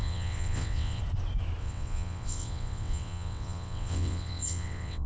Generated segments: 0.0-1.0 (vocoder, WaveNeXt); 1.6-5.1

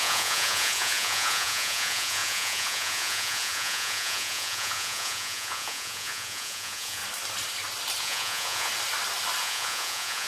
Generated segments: 0.0-7.0 (vocoder, Vocos); 8.0-8.7; 9.4-10.3

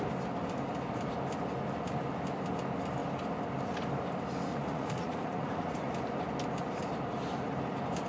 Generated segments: 4.5-5.9 (vocoder, Vocos)

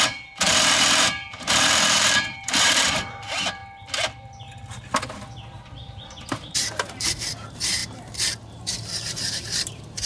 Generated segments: 0.0-3.6 (vocoder, BigVGAN v2); 6.2-10.1